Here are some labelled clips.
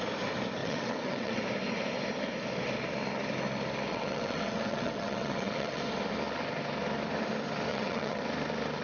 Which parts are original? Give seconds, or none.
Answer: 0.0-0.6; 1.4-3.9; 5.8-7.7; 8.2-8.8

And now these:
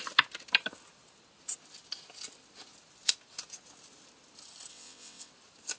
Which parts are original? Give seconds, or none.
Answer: 0.0-4.7; 5.3-5.8

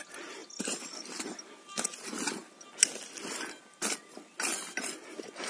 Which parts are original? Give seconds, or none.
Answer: 0.0-5.5